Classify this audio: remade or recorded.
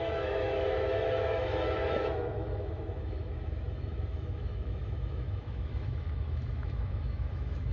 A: remade